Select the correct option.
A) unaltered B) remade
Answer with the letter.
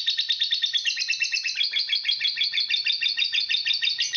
A